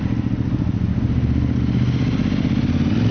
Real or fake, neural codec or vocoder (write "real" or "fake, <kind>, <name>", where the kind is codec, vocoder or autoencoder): real